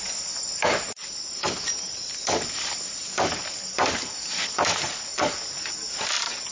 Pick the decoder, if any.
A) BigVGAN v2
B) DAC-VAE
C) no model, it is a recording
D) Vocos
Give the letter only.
C